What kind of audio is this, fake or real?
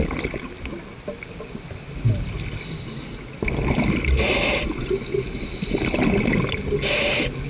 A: real